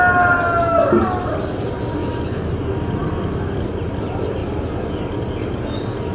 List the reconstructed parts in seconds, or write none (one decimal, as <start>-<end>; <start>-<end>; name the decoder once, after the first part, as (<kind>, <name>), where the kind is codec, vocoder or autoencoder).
2.0-2.5 (autoencoder, DAC-VAE)